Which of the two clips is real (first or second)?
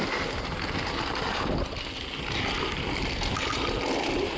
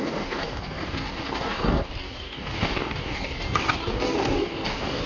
first